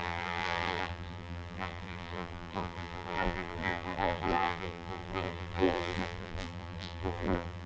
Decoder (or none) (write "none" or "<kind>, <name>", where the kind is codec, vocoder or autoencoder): vocoder, BigVGAN v2